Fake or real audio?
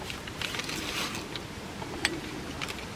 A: real